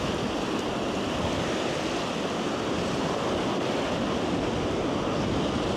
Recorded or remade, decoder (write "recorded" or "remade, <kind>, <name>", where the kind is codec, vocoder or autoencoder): recorded